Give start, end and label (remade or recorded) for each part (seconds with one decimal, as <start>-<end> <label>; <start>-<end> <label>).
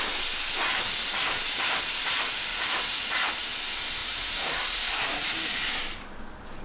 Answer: 0.0-2.5 recorded; 2.5-3.3 remade; 3.3-4.0 recorded; 4.0-5.0 remade; 5.0-6.6 recorded